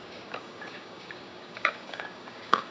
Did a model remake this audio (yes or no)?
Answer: yes